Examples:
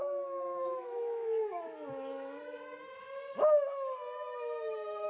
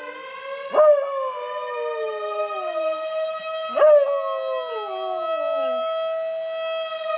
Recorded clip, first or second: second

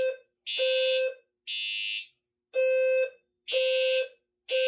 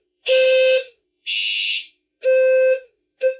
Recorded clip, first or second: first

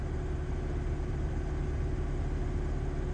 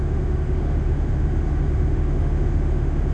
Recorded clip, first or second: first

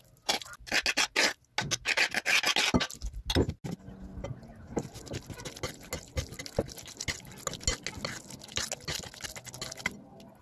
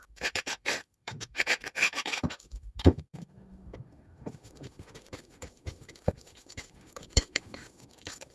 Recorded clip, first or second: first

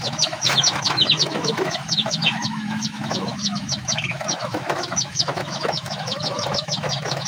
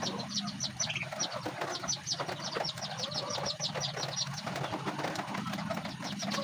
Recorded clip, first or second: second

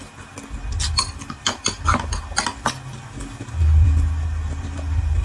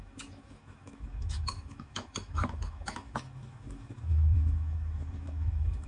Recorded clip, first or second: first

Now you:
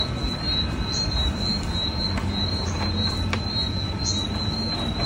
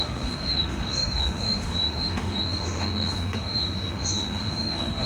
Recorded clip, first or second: first